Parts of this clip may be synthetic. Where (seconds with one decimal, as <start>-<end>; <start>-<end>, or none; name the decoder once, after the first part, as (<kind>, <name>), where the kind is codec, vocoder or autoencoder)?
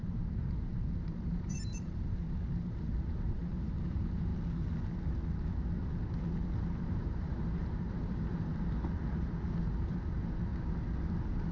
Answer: 0.0-4.3 (vocoder, BigVGAN v2); 6.8-8.5; 9.6-10.5